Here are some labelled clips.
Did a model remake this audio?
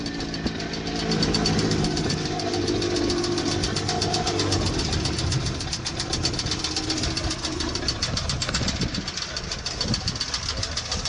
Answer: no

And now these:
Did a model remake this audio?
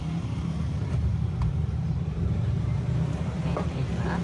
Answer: yes